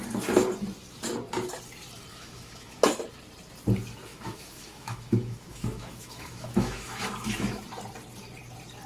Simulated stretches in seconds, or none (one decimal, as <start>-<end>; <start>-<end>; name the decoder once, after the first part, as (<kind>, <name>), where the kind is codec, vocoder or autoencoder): 2.1-2.8 (autoencoder, DAC-VAE); 4.1-7.6